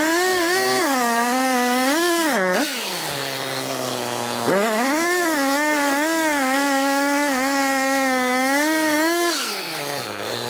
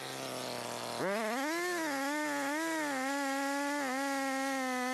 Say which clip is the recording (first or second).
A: second